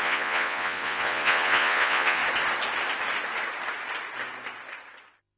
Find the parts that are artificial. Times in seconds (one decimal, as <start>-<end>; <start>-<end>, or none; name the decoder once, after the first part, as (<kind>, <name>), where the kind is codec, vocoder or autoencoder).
0.0-2.2 (vocoder, Vocos)